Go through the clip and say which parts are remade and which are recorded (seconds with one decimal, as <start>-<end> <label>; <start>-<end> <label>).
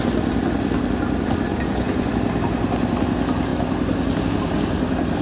0.0-1.5 recorded; 1.5-2.1 remade; 2.1-5.2 recorded